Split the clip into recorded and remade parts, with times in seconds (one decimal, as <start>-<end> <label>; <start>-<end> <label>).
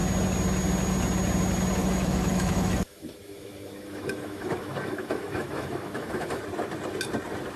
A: 0.0-1.8 recorded; 1.8-6.4 remade; 6.4-7.6 recorded